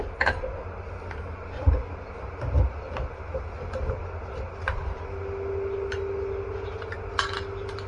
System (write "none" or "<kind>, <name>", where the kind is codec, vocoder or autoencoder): none